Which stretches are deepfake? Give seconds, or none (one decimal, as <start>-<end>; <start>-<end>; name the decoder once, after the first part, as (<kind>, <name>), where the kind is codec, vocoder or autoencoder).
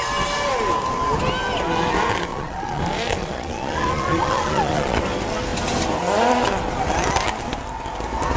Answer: 2.3-2.8 (vocoder, Vocos); 3.2-5.0